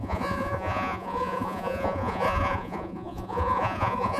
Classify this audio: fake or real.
fake